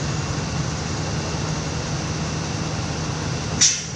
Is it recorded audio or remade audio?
recorded